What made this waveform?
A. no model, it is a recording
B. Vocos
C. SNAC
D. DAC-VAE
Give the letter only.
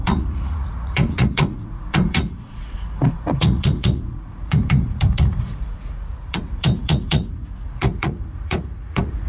B